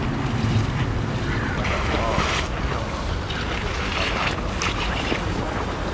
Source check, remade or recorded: recorded